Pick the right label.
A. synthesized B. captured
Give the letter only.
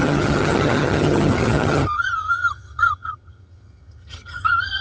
A